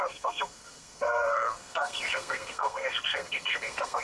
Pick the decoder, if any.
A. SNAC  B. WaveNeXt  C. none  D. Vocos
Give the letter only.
A